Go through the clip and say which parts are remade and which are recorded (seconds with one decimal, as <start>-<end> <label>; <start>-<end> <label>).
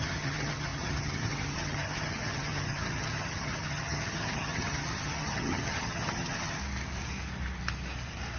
0.0-6.6 remade; 6.6-8.4 recorded